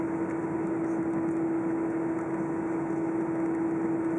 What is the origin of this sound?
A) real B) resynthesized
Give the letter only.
A